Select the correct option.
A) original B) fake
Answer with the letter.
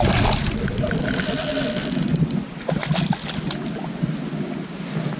A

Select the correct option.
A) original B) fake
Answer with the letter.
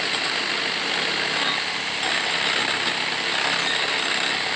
A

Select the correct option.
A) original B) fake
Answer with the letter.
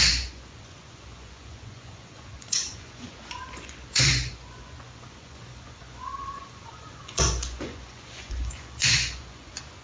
B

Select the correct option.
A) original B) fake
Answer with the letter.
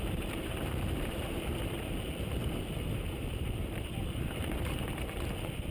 B